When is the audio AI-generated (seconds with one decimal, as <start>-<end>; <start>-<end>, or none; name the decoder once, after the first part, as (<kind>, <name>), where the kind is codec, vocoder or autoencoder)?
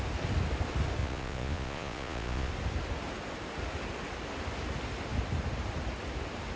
1.0-2.5 (vocoder, Vocos)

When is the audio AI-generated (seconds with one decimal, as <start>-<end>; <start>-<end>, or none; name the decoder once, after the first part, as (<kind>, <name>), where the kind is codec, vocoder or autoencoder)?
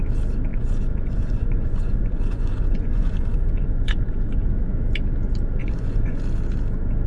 0.5-4.3 (vocoder, Vocos); 5.6-6.2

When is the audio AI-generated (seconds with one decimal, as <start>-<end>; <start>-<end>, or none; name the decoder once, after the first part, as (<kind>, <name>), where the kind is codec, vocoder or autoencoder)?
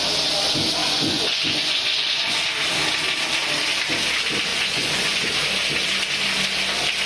0.8-2.4 (vocoder, Vocos); 4.5-5.3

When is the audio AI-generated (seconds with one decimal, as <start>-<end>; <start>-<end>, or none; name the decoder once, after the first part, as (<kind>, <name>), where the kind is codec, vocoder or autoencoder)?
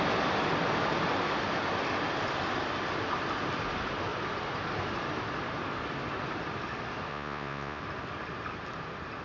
7.1-7.8 (vocoder, Vocos)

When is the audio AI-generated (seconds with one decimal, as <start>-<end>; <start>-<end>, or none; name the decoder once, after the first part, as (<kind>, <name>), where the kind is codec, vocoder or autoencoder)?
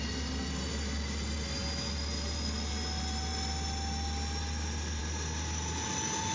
none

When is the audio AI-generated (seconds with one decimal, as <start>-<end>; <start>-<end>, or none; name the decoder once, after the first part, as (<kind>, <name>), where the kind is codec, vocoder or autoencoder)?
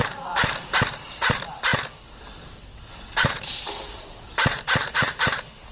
none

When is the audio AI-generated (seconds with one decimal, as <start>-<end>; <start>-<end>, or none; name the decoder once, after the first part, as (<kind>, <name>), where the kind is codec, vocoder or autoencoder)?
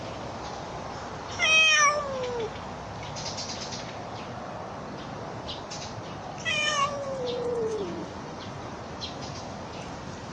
6.5-8.7 (vocoder, Vocos)